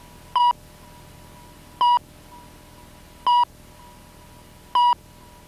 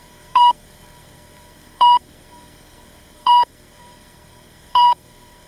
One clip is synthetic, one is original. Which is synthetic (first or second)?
second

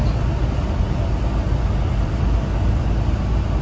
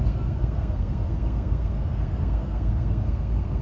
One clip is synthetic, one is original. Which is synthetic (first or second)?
second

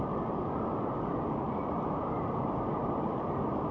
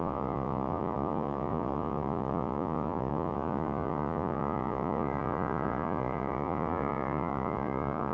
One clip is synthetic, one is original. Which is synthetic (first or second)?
second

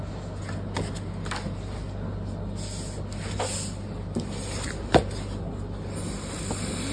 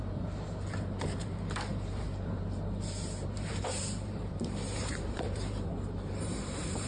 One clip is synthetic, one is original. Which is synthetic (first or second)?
second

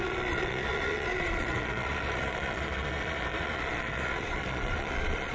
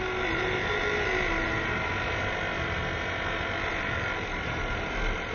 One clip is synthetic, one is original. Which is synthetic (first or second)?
first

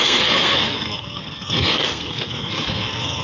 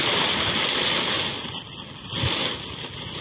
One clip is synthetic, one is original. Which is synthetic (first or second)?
first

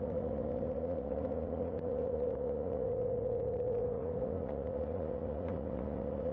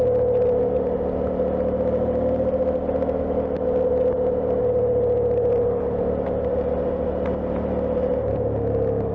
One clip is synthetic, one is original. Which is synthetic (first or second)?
first